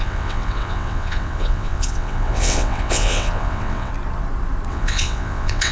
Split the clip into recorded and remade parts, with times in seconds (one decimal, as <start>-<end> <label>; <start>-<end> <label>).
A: 0.0-3.9 remade; 3.9-4.7 recorded; 4.7-5.7 remade